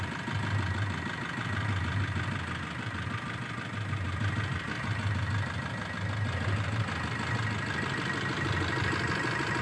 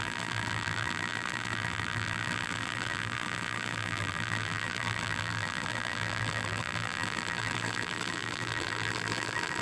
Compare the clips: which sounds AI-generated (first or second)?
second